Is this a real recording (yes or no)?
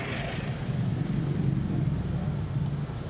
yes